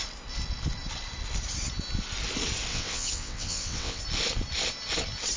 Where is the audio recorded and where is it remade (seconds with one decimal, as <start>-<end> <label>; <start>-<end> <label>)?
0.0-2.7 recorded; 2.7-4.0 remade; 4.0-5.4 recorded